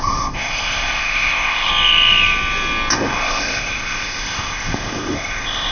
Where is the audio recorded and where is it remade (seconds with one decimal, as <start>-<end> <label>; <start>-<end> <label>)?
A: 0.0-1.7 remade; 1.7-2.9 recorded; 2.9-5.7 remade